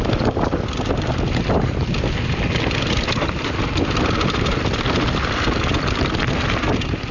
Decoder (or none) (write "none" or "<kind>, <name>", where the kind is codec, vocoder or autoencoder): none